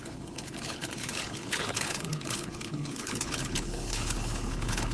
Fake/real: fake